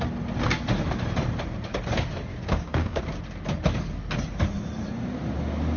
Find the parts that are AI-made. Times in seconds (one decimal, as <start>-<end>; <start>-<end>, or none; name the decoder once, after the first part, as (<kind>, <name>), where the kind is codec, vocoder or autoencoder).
2.3-3.0 (codec, DAC)